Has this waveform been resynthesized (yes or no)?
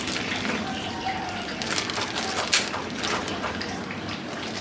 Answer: no